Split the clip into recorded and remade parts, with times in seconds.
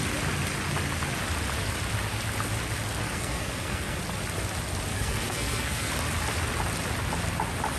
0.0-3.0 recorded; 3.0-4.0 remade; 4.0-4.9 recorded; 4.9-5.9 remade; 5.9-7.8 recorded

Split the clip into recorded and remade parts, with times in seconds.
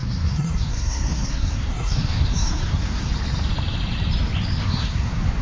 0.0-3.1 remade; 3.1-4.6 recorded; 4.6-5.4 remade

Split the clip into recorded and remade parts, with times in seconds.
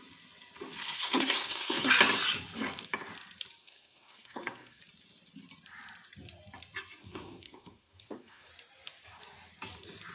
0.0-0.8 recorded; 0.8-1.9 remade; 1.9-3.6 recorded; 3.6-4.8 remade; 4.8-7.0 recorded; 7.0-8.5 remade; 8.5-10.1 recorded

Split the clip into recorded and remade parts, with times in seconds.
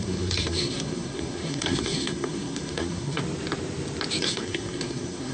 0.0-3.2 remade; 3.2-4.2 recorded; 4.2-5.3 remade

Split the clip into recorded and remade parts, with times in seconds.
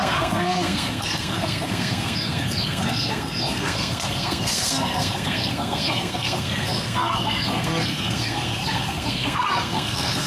0.0-10.3 remade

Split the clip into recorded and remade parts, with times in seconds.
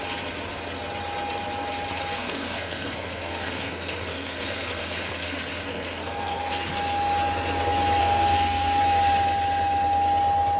0.0-1.9 recorded; 1.9-6.5 remade; 6.5-8.0 recorded; 8.0-8.8 remade; 8.8-10.6 recorded